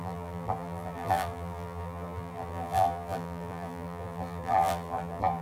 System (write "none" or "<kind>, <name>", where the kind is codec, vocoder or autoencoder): vocoder, BigVGAN v2